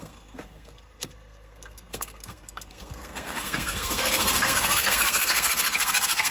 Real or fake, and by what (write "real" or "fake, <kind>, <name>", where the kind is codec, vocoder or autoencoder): fake, codec, SNAC